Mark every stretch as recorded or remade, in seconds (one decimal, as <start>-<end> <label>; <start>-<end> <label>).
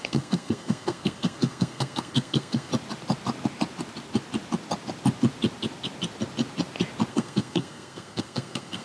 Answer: 0.0-2.7 remade; 2.7-7.1 recorded; 7.1-8.8 remade